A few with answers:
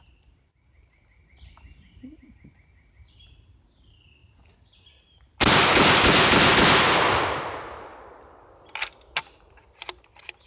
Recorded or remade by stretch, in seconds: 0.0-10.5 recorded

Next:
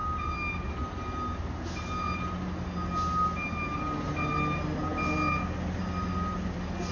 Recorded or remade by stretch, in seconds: 0.0-6.9 recorded

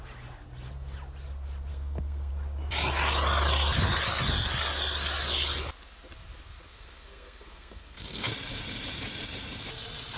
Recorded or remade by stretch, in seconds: 0.0-1.7 recorded; 1.7-2.3 remade; 2.3-6.7 recorded; 6.7-8.3 remade; 8.3-10.2 recorded